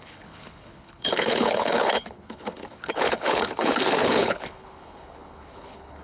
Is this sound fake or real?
fake